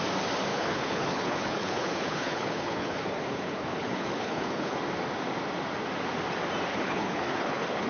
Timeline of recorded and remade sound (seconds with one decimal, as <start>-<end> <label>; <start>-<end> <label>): 0.0-0.5 recorded; 0.5-4.8 remade; 4.8-6.7 recorded; 6.7-7.9 remade